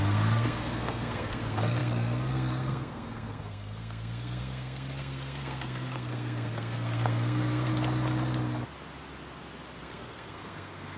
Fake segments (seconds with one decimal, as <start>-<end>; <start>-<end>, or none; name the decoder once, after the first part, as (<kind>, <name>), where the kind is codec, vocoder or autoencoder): 0.0-7.7 (codec, SNAC); 9.8-11.0